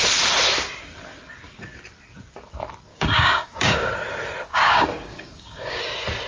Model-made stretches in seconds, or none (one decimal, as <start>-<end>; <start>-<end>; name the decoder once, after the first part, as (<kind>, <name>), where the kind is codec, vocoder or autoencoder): 2.9-3.9 (codec, DAC); 4.5-5.8